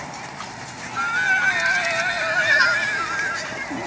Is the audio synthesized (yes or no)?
no